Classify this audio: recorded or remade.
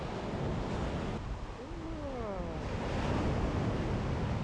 recorded